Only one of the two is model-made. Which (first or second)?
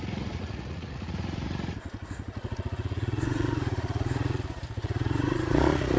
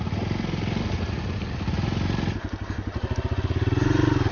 first